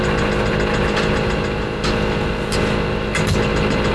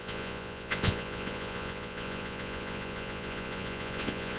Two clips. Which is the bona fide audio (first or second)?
first